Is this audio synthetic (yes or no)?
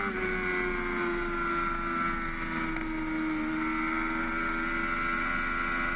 no